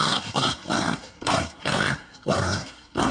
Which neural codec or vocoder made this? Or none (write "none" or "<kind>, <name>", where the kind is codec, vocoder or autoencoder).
codec, SNAC